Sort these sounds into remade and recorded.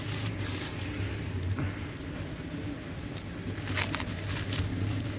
recorded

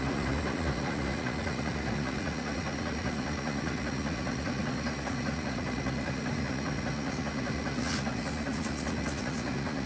remade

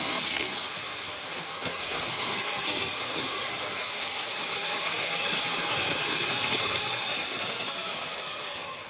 remade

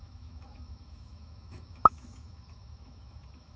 remade